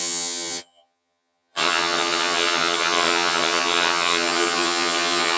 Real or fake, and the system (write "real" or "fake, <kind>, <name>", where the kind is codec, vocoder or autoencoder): fake, vocoder, HiFi-GAN